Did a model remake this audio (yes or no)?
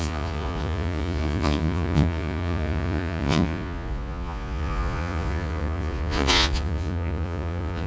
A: yes